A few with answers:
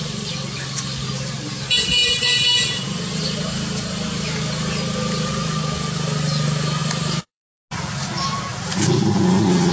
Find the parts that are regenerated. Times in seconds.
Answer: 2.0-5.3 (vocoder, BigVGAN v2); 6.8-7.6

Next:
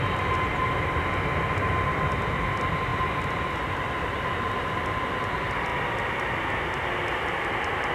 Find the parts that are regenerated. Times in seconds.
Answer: none

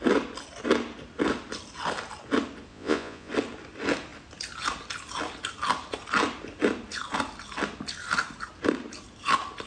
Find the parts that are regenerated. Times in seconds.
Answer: 2.7-3.3 (vocoder, Vocos)

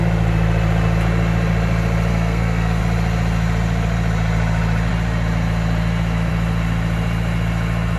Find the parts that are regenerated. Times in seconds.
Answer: 2.1-2.8 (codec, SNAC)

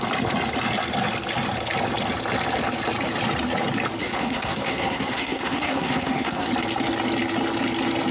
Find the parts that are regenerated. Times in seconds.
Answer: 4.0-6.5 (codec, SNAC)

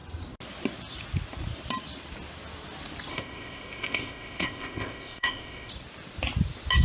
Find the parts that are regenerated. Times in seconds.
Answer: 3.1-5.7 (codec, ZipCodec)

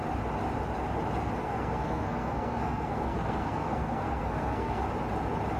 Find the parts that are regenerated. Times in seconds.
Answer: 1.4-4.8 (codec, SNAC)